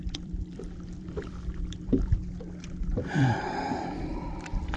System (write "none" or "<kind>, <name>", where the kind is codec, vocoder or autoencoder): vocoder, BigVGAN v2